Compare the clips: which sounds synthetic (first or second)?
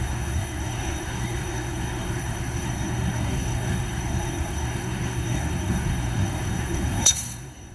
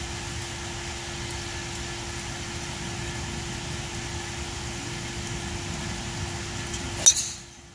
first